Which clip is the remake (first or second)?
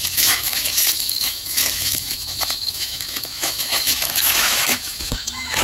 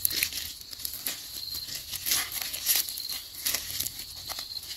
first